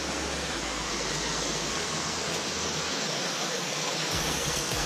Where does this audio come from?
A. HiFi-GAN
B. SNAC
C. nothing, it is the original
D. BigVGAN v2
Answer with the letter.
B